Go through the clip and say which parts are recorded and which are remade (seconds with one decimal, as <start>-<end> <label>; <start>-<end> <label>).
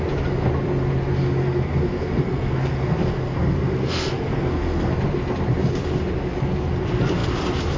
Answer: 0.0-1.4 recorded; 1.4-4.9 remade; 4.9-7.8 recorded